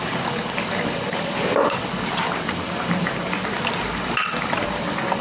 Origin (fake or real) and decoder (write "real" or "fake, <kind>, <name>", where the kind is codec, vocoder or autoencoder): real